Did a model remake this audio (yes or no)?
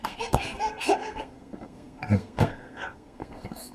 yes